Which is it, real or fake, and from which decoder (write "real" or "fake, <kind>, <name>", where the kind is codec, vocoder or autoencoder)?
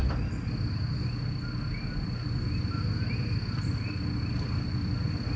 real